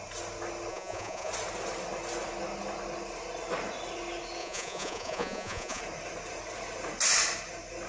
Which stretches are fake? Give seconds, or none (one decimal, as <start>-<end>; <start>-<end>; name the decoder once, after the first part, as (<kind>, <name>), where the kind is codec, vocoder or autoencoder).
0.7-1.3 (vocoder, Vocos); 4.4-5.8